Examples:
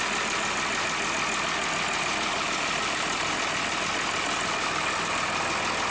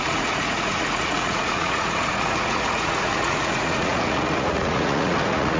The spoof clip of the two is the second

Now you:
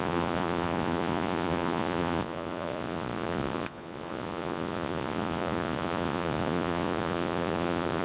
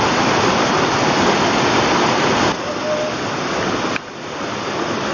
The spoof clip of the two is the first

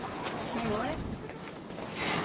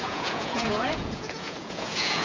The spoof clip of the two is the second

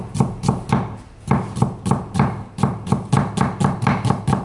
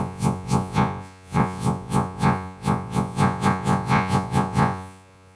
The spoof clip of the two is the second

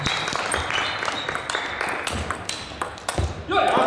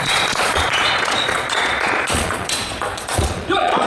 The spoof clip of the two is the second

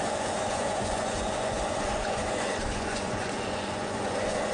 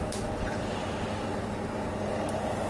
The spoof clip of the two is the first